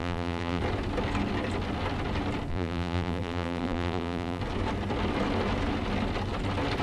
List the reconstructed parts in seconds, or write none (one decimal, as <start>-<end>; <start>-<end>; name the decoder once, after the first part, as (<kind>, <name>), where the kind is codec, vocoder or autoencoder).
0.0-0.6 (vocoder, BigVGAN v2); 2.5-4.4